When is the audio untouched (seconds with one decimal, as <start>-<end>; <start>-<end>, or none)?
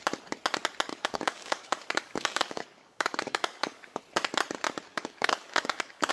0.0-0.9; 4.0-4.9